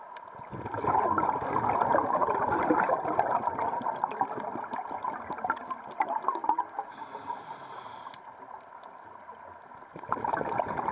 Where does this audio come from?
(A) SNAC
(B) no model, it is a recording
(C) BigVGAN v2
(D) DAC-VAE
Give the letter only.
B